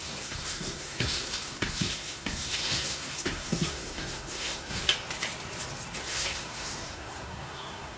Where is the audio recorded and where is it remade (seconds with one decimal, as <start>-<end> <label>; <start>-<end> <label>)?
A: 0.0-4.8 remade; 4.8-6.0 recorded; 6.0-8.0 remade